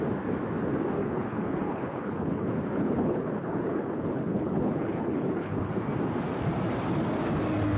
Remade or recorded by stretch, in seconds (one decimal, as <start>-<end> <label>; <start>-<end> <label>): 0.0-1.0 recorded; 1.0-5.7 remade; 5.7-7.8 recorded